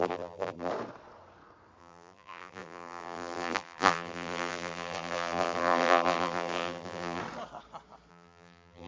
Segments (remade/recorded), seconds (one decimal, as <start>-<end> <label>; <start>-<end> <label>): 0.0-0.7 remade; 0.7-1.8 recorded; 1.8-7.2 remade; 7.2-8.1 recorded; 8.1-8.9 remade